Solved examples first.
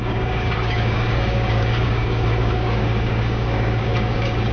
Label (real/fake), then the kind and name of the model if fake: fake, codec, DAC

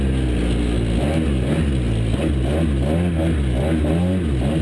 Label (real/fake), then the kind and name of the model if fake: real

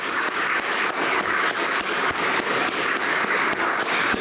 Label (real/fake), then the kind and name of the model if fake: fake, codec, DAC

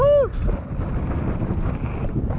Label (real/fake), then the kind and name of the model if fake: real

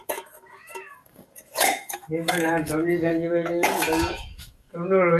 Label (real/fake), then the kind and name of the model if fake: fake, codec, DAC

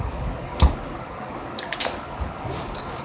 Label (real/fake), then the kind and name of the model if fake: fake, codec, DAC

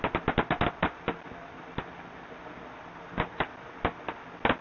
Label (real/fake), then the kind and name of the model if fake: real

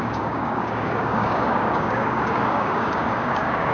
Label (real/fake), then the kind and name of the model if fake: fake, codec, DAC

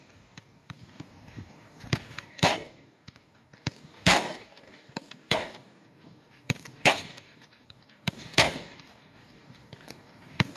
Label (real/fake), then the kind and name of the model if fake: fake, codec, DAC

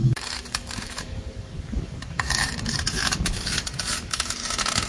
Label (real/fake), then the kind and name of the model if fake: fake, codec, DAC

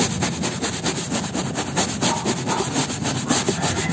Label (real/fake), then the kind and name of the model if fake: real